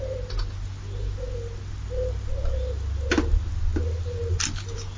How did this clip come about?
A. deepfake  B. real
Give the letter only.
B